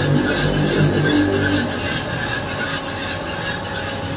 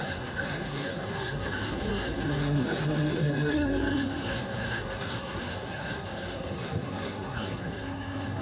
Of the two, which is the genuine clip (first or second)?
first